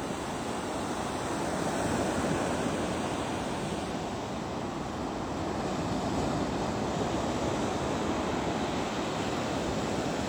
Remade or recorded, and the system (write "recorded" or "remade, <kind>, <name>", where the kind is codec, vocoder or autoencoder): recorded